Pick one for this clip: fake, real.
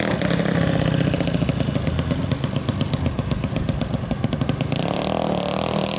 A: real